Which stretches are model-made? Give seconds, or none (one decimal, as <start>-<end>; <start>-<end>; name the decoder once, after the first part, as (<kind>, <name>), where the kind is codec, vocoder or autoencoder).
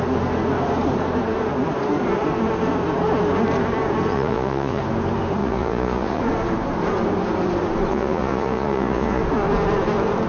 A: 4.1-4.8 (vocoder, Vocos); 5.4-6.2; 7.9-9.2